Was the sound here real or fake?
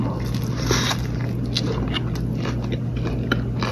real